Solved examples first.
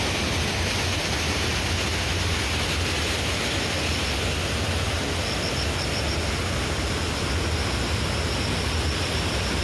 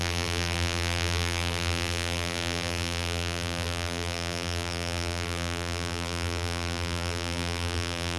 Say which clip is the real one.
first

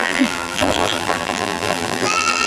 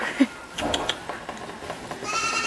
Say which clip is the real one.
second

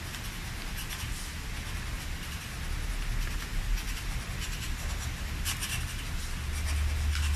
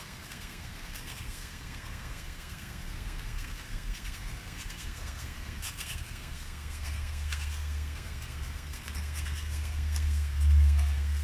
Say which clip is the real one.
first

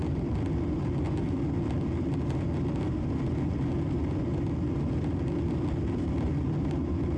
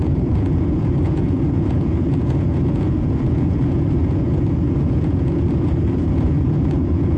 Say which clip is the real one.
first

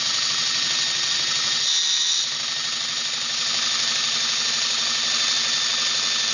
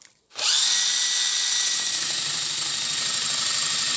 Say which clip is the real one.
first